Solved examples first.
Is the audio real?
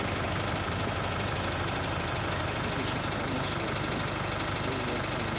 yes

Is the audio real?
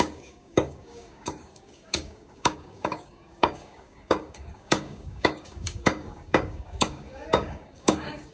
no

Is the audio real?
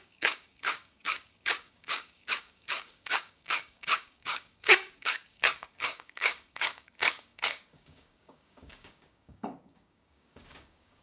no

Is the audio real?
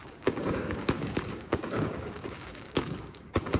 no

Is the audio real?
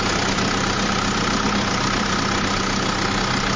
yes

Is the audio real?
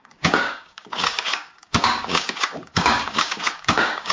no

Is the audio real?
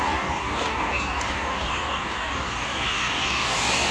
no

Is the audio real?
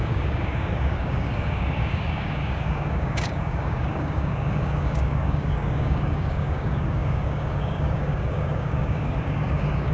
no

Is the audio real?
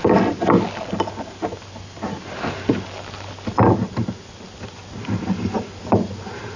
yes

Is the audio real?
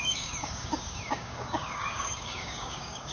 no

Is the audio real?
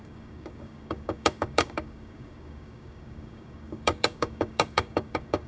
no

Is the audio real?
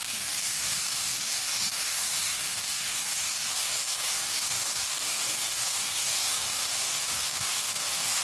no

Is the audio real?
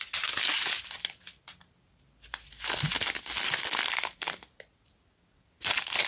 yes